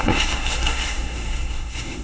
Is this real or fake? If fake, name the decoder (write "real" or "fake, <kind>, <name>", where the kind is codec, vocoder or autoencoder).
fake, codec, SNAC